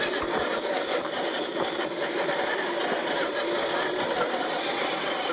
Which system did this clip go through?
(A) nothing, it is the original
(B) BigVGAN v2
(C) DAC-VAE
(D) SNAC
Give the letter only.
A